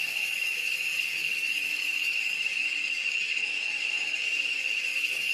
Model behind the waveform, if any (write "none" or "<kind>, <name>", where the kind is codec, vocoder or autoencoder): codec, DAC